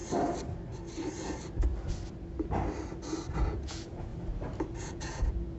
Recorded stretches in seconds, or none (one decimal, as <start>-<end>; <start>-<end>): 0.0-3.4; 4.1-4.8